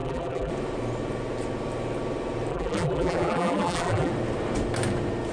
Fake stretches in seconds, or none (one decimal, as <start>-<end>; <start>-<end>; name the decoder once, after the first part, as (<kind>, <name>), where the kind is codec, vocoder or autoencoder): 0.0-0.5 (vocoder, BigVGAN v2); 2.5-4.1

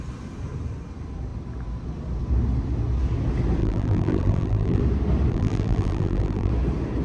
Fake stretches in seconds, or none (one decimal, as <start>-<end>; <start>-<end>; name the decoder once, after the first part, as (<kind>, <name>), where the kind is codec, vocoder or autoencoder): 3.6-4.8 (vocoder, BigVGAN v2); 5.3-6.5

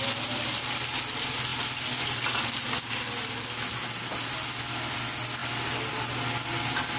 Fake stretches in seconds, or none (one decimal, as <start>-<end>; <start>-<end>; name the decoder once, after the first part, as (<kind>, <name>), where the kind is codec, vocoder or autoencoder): none

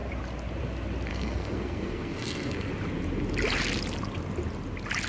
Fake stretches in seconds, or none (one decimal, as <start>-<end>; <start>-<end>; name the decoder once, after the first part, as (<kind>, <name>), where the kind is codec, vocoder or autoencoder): 1.1-2.7 (codec, SNAC)

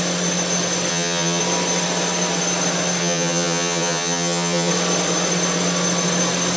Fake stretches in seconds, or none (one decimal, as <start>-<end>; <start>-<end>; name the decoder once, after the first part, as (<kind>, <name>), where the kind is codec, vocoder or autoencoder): 0.9-1.4 (vocoder, HiFi-GAN); 3.0-4.7

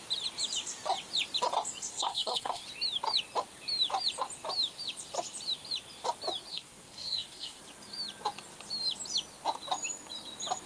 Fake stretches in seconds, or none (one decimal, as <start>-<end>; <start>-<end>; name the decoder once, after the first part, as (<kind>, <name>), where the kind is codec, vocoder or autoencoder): 1.9-2.6 (codec, SNAC); 6.5-7.6

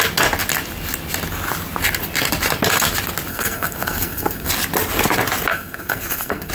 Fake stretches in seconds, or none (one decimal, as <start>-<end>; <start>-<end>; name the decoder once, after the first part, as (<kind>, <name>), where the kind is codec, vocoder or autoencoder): 3.3-4.5 (codec, SNAC); 5.5-6.5